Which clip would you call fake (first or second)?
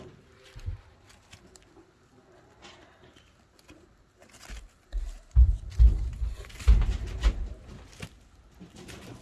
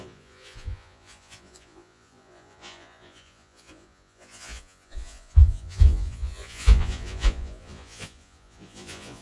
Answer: second